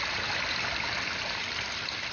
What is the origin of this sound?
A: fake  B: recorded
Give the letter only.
B